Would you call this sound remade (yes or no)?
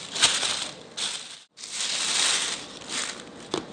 no